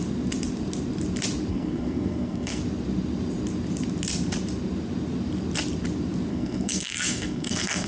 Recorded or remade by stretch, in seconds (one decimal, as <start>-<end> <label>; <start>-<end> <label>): 0.0-1.5 recorded; 1.5-2.6 remade; 2.6-6.3 recorded; 6.3-7.9 remade